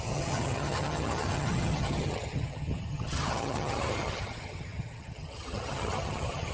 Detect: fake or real fake